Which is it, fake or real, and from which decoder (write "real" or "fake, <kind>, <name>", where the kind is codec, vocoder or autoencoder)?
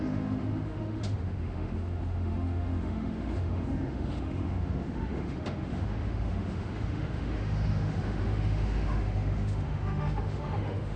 fake, autoencoder, DAC-VAE